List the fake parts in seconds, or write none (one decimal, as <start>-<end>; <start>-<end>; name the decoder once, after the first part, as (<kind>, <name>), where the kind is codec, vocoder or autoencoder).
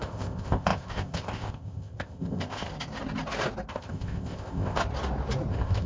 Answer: 0.0-2.7 (codec, ZipCodec); 3.7-4.8; 5.5-5.9